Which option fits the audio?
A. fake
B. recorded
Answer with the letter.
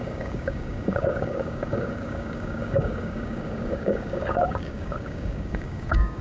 A